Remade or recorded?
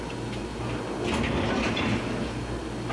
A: recorded